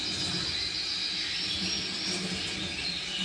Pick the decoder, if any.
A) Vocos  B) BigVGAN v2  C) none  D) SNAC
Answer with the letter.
C